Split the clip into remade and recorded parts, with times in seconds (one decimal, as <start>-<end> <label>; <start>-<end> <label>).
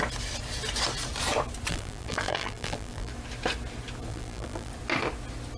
0.0-1.7 recorded; 1.7-3.1 remade; 3.1-4.1 recorded; 4.1-4.7 remade; 4.7-5.6 recorded